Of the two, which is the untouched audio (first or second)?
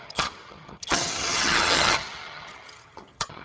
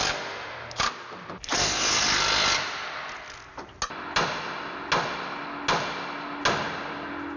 second